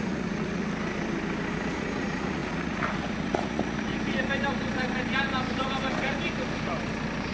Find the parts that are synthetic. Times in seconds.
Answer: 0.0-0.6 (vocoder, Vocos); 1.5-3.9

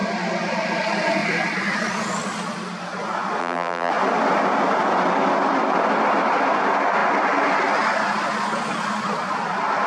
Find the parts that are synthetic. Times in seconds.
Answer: 3.4-3.9 (vocoder, BigVGAN v2)

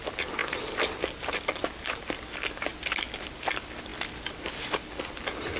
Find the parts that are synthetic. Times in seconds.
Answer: none

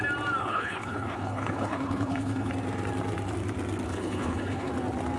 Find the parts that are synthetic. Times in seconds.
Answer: 0.4-2.5 (codec, HILCodec); 3.9-4.7

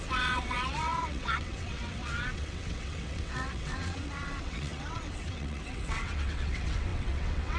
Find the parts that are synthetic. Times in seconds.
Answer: 0.0-7.6 (vocoder, WaveNeXt)

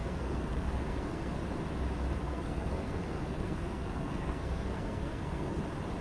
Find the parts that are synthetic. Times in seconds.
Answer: 0.0-1.4 (codec, SNAC); 2.2-5.6

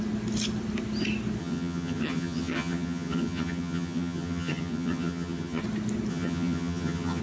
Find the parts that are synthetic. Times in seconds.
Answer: 1.4-5.6 (vocoder, HiFi-GAN); 6.1-7.2